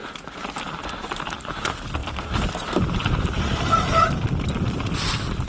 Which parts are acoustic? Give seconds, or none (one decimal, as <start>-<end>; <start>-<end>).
1.6-2.0; 3.2-5.5